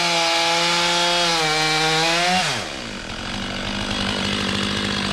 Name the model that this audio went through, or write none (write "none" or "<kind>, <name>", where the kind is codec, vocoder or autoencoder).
none